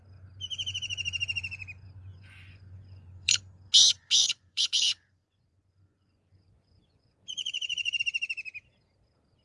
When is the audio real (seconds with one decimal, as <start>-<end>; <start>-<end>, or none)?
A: 0.0-2.1; 3.4-3.8; 8.0-9.4